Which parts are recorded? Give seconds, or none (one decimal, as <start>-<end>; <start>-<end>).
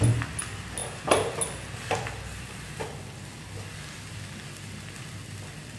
0.0-5.8